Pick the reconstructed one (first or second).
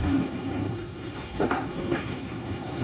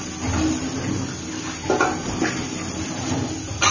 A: first